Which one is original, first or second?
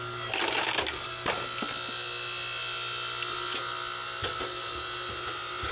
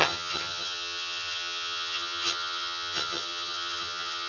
first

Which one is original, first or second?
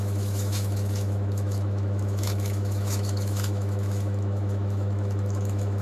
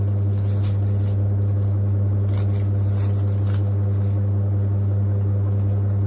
second